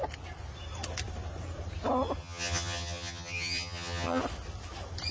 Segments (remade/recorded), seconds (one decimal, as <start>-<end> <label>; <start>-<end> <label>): 0.0-2.2 recorded; 2.2-4.2 remade; 4.2-5.1 recorded